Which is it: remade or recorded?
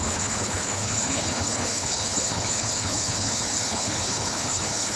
remade